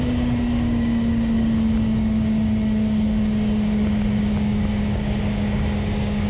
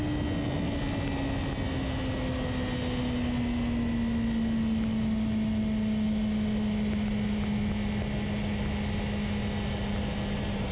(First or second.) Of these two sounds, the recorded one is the second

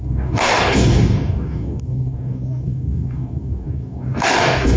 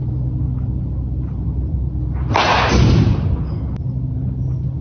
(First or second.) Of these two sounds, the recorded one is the second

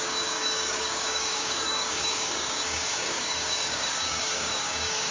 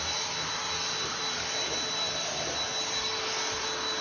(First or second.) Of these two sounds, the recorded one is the second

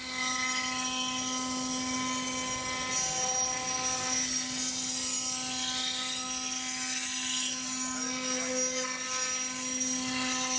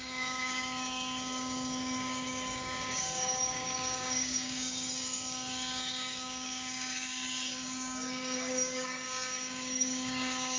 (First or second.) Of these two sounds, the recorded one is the first